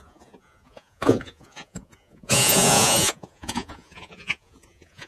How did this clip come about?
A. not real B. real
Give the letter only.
A